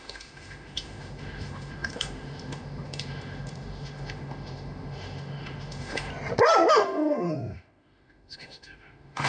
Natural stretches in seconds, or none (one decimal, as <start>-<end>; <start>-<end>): 6.1-6.7